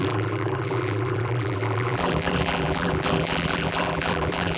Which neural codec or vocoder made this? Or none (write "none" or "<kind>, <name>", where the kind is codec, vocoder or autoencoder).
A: vocoder, BigVGAN v2